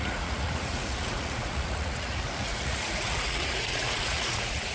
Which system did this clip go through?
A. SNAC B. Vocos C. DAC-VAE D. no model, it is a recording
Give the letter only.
B